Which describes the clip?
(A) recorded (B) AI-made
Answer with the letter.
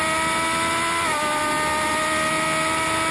A